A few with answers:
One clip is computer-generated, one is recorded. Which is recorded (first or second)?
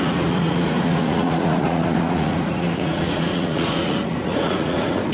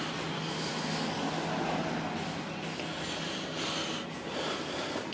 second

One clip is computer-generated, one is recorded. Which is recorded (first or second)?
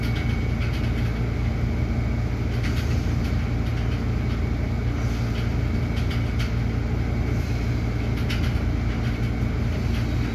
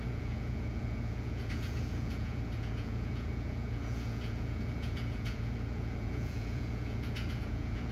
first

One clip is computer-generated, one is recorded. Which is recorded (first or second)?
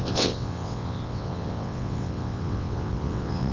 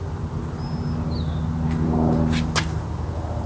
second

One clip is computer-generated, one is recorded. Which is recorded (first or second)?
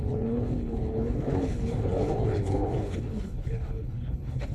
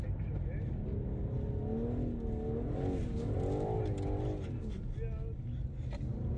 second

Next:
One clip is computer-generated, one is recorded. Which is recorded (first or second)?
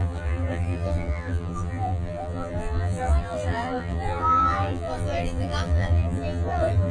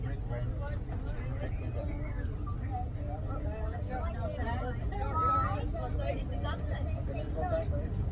second